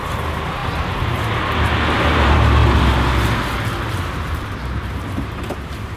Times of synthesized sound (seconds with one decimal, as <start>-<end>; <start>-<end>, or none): 0.0-2.6; 4.0-6.0